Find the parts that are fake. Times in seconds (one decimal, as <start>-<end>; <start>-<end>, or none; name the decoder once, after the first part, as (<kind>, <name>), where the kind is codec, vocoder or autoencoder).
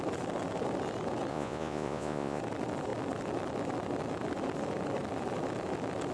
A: 1.3-2.4 (vocoder, Vocos)